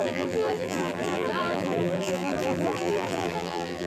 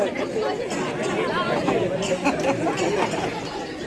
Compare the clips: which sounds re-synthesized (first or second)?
first